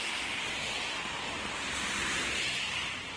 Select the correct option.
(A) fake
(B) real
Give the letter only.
B